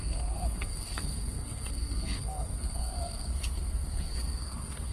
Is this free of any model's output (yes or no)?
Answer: no